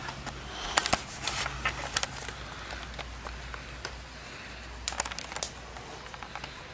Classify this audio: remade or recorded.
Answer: recorded